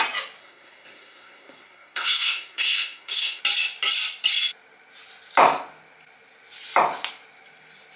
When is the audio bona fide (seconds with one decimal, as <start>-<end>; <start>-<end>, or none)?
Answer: 0.0-0.4; 3.4-8.0

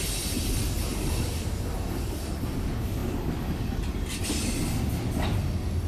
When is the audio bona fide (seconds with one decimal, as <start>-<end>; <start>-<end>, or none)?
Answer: 0.0-0.9; 2.5-5.9

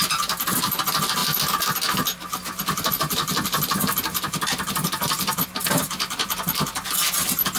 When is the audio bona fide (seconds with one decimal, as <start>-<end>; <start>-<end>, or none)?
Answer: 1.2-2.9; 5.6-6.6

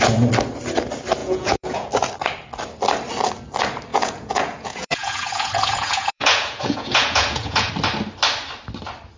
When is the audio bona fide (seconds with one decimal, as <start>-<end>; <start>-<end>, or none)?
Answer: 0.0-1.2; 1.9-3.9; 7.7-9.2

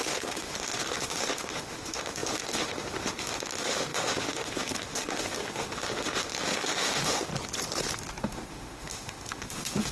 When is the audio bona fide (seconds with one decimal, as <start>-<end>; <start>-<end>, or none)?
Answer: 7.3-8.2

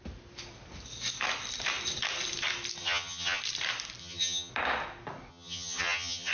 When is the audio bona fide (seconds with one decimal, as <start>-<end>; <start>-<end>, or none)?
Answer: 0.0-2.8; 3.4-4.0; 4.5-5.3